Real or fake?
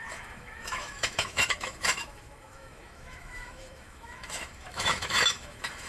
fake